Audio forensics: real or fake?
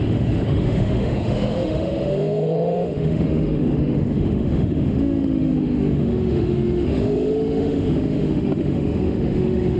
fake